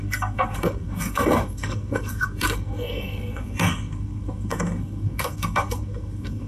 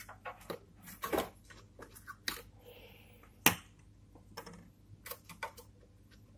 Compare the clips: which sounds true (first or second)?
second